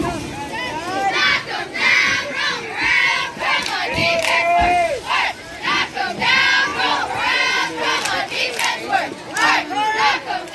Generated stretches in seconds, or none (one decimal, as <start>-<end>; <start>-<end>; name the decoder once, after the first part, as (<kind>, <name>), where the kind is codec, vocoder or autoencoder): 4.0-6.2 (vocoder, BigVGAN v2); 6.7-8.0